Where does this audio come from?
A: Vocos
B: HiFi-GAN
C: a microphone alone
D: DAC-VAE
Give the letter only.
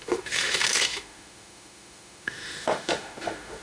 D